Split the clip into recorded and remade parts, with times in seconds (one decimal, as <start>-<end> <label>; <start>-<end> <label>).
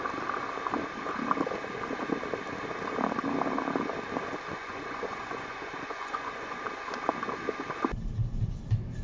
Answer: 0.0-4.5 recorded; 4.5-6.6 remade; 6.6-9.0 recorded